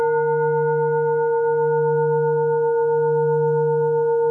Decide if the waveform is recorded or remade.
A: recorded